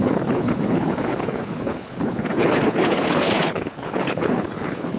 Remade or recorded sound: remade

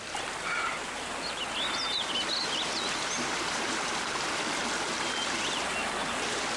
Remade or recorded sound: recorded